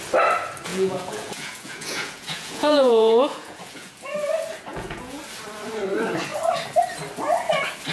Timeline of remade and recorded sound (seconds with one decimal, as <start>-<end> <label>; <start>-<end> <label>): 0.0-0.7 recorded; 0.7-3.9 remade; 3.9-4.7 recorded; 4.7-5.2 remade; 5.2-7.9 recorded